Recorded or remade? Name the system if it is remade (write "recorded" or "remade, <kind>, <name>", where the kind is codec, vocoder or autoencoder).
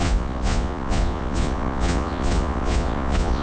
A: remade, vocoder, Vocos